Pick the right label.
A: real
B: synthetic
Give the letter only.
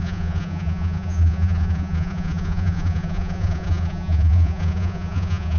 B